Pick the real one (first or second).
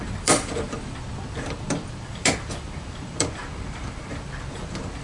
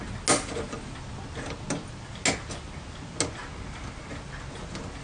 second